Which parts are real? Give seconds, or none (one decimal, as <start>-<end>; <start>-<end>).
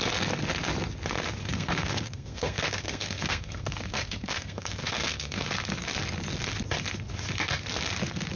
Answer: 0.0-1.4; 5.4-8.4